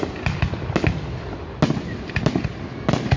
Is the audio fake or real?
real